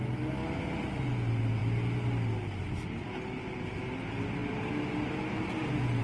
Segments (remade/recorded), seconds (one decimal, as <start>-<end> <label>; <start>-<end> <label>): 0.0-6.0 recorded